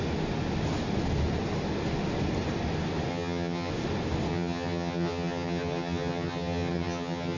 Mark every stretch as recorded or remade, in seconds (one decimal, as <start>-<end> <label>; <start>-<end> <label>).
0.0-3.1 recorded; 3.1-3.7 remade; 3.7-4.3 recorded; 4.3-7.4 remade